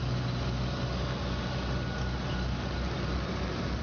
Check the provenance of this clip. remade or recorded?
recorded